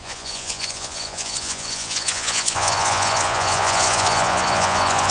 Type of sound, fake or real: fake